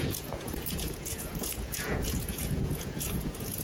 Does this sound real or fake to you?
fake